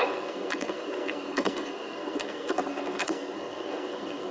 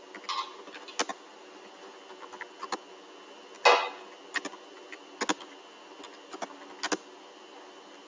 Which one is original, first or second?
second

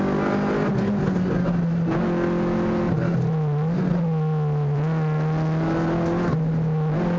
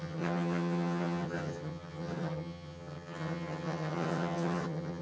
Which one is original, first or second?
first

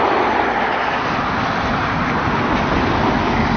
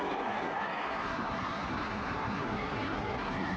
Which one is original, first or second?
first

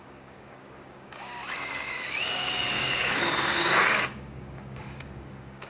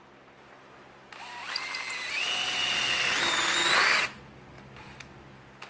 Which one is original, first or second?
second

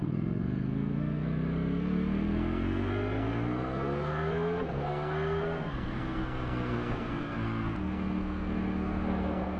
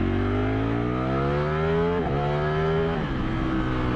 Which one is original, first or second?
second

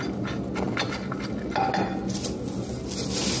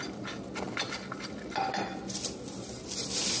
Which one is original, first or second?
first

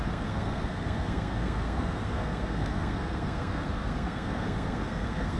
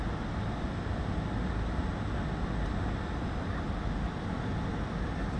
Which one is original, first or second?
second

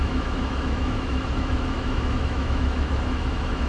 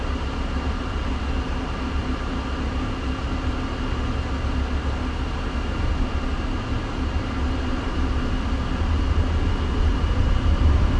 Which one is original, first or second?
second